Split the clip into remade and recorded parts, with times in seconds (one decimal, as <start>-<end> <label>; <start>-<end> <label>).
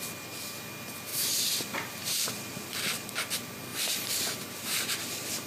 0.0-1.1 recorded; 1.1-2.3 remade; 2.3-3.7 recorded; 3.7-5.5 remade